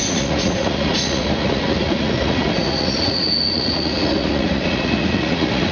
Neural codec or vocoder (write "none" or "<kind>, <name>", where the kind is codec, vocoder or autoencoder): vocoder, Vocos